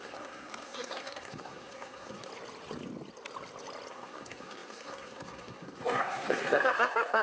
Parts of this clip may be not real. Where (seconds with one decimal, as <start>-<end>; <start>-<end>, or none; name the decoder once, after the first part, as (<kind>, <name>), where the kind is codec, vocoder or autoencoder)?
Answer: 0.0-2.3 (codec, SNAC); 3.9-7.2